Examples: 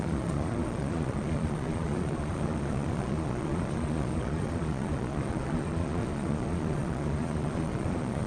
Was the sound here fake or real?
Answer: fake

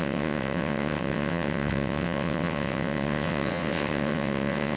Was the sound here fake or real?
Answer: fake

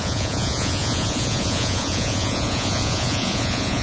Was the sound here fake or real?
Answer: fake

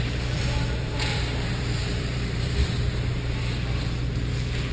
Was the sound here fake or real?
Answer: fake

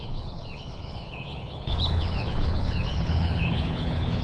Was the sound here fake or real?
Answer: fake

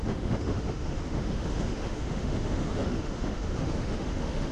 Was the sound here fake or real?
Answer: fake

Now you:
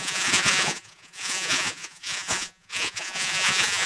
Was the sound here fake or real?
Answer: fake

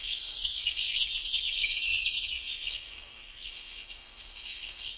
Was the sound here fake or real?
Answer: fake